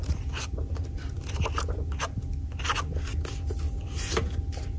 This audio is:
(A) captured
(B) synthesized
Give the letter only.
A